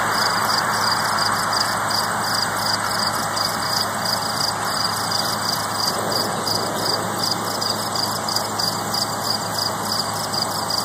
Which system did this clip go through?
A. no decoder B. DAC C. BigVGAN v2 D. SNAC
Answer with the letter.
A